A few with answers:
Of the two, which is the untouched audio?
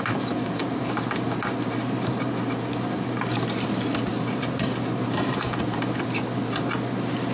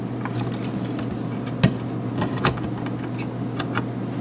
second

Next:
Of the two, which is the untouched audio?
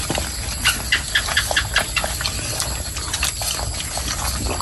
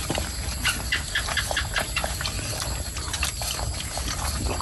first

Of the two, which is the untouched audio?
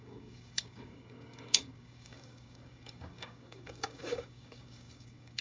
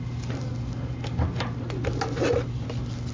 second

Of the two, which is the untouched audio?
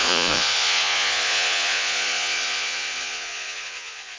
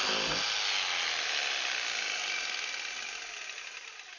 second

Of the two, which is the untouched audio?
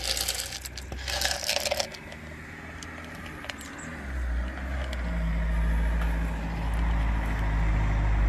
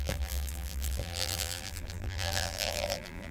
first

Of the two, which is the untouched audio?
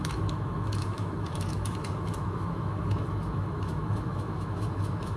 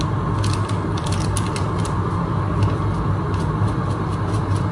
second